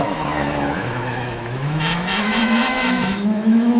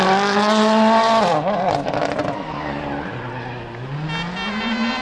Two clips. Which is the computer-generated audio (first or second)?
first